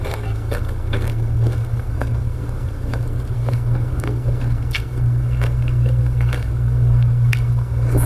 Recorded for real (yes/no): no